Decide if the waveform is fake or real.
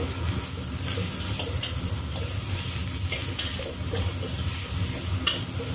real